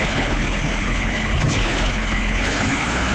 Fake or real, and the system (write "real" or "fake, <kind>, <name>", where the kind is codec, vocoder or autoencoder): fake, codec, HILCodec